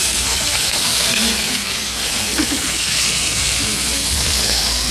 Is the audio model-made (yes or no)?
yes